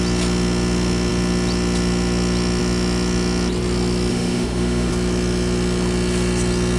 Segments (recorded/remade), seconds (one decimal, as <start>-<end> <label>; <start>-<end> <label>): 0.0-4.1 recorded; 4.1-4.9 remade; 4.9-6.8 recorded